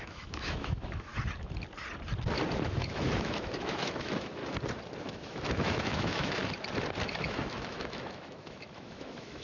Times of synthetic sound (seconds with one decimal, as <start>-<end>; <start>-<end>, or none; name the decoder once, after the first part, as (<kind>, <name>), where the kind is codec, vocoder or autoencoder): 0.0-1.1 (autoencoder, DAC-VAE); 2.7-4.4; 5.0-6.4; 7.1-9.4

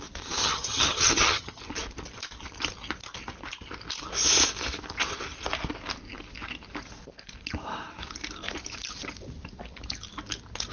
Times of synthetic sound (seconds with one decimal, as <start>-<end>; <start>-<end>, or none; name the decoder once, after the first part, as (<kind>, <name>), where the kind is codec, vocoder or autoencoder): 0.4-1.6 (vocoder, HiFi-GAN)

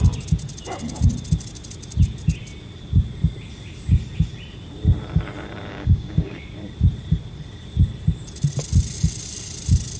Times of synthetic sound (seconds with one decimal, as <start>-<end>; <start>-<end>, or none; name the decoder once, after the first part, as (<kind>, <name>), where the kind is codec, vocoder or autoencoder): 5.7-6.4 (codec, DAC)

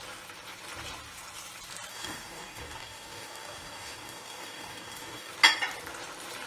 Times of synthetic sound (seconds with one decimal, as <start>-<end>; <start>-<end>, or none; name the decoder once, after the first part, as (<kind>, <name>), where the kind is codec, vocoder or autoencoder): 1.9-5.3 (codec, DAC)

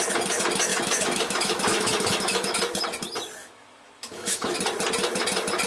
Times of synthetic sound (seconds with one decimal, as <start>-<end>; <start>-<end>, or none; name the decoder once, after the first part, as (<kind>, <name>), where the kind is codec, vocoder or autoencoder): 0.7-2.6 (autoencoder, DAC-VAE); 3.4-4.6

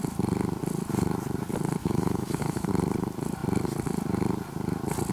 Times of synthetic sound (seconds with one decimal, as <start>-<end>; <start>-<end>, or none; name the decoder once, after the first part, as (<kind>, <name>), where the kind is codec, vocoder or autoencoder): 1.8-2.7 (autoencoder, DAC-VAE)